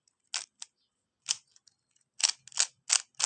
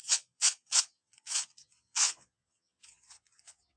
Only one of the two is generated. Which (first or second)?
second